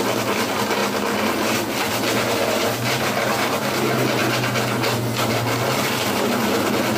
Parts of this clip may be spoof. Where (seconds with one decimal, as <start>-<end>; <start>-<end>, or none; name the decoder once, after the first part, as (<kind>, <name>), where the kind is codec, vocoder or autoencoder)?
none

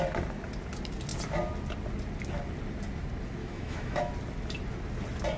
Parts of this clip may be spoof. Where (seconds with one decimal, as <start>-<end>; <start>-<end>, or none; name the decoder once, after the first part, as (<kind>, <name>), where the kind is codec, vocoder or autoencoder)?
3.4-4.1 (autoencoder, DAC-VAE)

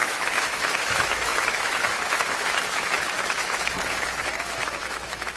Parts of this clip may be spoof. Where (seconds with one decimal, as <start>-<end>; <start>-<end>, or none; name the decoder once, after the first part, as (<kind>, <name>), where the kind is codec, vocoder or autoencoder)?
0.0-5.4 (autoencoder, DAC-VAE)